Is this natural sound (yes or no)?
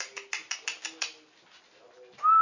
yes